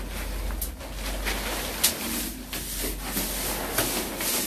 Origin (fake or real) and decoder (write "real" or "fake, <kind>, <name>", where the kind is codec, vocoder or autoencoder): real